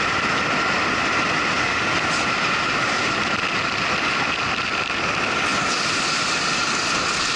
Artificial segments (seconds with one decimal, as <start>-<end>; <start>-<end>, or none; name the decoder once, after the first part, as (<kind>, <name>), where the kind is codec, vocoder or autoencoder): none